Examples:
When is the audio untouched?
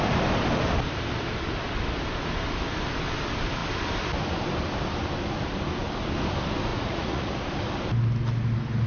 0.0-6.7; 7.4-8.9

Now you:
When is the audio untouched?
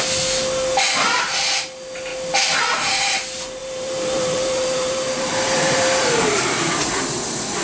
0.0-3.6; 7.0-7.6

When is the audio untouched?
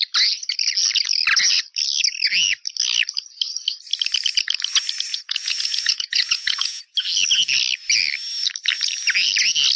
0.0-5.1; 6.8-9.8